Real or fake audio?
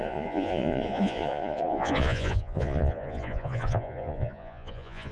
fake